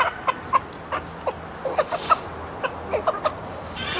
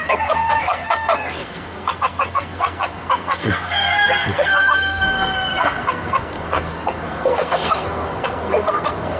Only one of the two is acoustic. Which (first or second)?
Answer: first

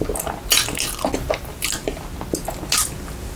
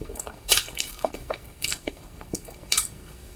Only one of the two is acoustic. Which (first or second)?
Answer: first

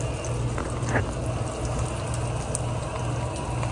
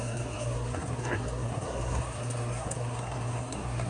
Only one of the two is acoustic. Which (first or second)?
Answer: first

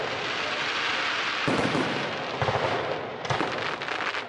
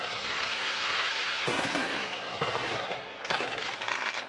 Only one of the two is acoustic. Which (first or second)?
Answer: first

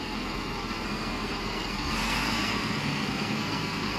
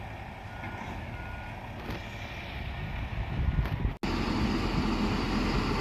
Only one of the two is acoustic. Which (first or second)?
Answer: second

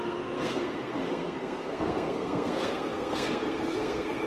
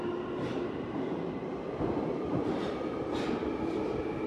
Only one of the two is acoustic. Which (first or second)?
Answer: second